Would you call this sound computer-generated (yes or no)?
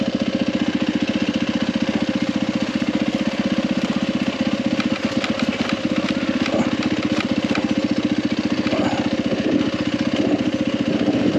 no